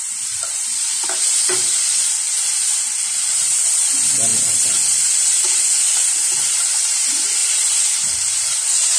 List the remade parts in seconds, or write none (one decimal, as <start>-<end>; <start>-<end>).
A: none